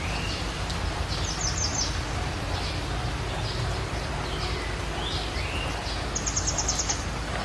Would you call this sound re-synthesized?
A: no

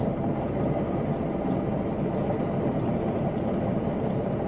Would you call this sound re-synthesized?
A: yes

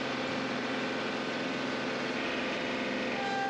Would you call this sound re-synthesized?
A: no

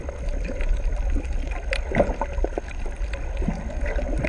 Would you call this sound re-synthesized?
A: no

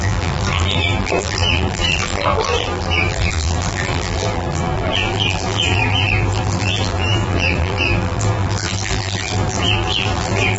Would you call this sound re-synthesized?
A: yes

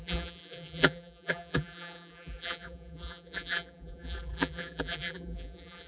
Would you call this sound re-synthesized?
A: yes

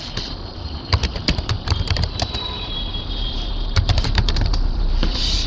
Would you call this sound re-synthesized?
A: yes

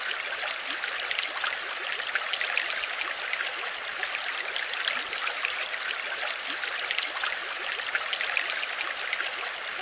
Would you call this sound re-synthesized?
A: no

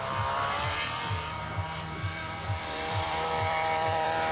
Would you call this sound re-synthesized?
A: yes